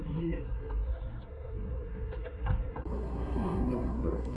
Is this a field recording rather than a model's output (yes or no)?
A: no